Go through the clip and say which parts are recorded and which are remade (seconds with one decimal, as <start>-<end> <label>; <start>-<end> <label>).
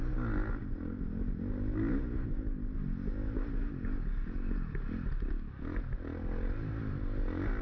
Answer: 0.0-7.6 recorded